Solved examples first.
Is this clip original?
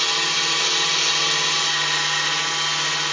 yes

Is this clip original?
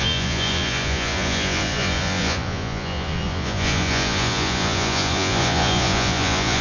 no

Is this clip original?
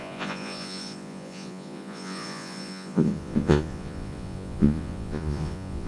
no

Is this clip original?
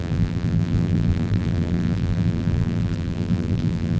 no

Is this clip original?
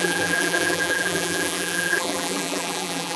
no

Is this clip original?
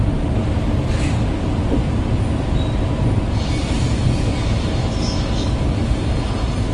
yes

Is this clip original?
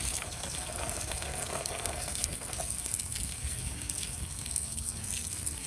no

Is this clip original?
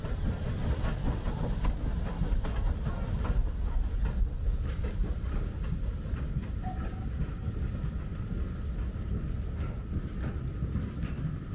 yes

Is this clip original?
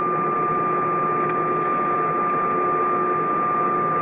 yes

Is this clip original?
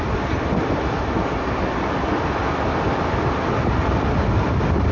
yes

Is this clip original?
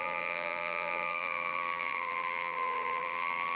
no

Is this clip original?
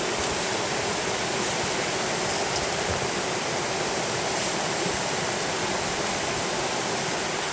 yes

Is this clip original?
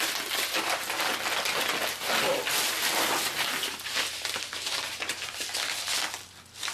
yes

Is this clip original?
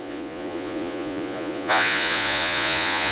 no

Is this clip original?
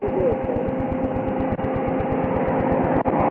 yes